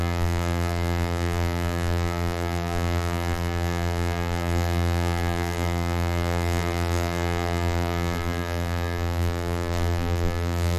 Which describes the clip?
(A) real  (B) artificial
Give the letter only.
B